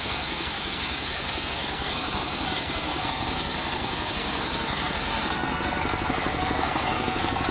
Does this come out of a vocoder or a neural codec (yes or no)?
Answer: yes